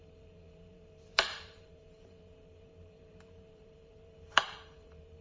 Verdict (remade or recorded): remade